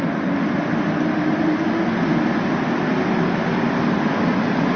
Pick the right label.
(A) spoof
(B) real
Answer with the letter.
B